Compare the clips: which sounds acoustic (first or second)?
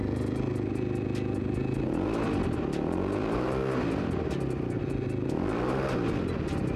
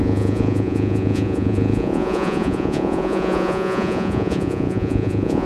first